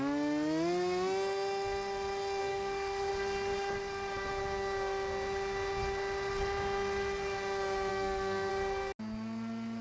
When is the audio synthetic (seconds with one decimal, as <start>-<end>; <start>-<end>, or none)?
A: 2.4-3.1; 7.9-8.5